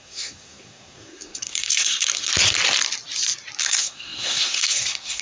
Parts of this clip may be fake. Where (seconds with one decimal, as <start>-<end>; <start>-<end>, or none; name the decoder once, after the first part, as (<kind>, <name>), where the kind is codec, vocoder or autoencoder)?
0.0-2.3 (codec, SNAC); 3.6-5.2